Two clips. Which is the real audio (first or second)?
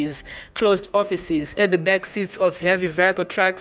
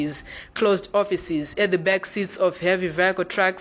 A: second